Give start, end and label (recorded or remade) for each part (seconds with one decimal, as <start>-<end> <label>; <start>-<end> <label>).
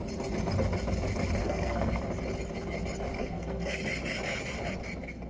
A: 0.0-1.4 recorded; 1.4-2.0 remade; 2.0-3.2 recorded; 3.2-3.8 remade; 3.8-5.3 recorded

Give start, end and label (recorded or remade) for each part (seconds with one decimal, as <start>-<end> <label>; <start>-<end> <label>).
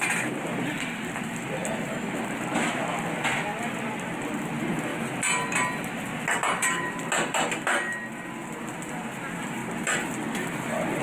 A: 0.0-11.0 recorded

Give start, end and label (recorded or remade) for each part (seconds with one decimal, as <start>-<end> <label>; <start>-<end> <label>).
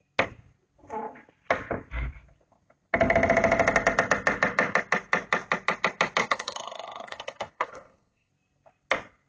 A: 0.0-6.2 recorded; 6.2-8.3 remade; 8.3-9.3 recorded